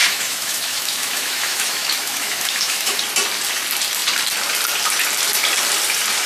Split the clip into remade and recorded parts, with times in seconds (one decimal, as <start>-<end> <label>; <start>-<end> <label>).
0.0-3.0 remade; 3.0-6.3 recorded